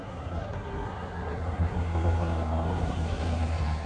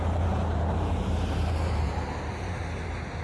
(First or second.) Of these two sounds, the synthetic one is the first